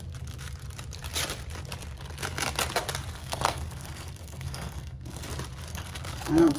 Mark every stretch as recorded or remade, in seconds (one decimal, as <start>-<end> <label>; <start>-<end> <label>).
0.0-3.2 recorded; 3.2-5.3 remade; 5.3-5.7 recorded; 5.7-6.6 remade